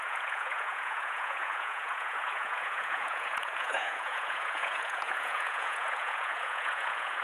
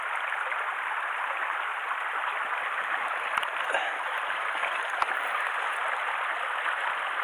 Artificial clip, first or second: first